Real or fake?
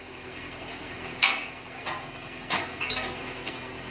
fake